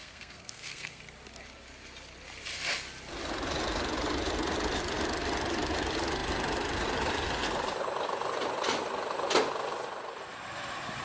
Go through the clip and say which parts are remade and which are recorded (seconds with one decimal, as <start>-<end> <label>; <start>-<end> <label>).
0.0-1.0 remade; 1.0-11.0 recorded